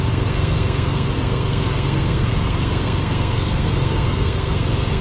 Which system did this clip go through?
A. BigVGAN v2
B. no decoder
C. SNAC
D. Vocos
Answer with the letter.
C